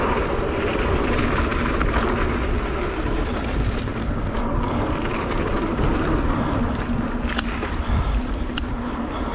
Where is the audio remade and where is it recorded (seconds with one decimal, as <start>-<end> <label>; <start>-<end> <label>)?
0.0-9.3 recorded